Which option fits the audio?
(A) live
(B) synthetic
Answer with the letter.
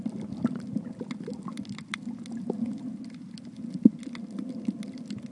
A